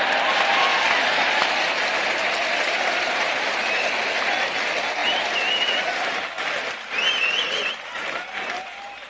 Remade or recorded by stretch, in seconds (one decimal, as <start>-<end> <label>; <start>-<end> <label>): 0.0-2.4 recorded; 2.4-3.6 remade; 3.6-5.0 recorded; 5.0-7.7 remade; 7.7-9.1 recorded